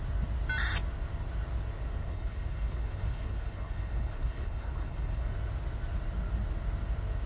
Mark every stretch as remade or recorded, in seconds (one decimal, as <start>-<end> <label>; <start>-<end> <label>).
0.0-2.0 recorded; 2.0-5.3 remade; 5.3-7.3 recorded